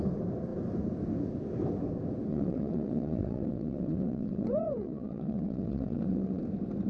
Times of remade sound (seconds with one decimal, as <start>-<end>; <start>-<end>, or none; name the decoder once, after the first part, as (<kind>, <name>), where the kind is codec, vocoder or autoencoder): 2.3-6.4 (vocoder, WaveNeXt)